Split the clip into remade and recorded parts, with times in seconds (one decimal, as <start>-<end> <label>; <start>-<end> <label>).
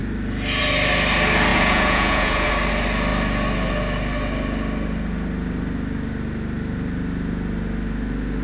0.0-1.5 recorded; 1.5-2.5 remade; 2.5-8.4 recorded